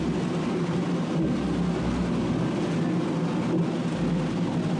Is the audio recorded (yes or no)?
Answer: yes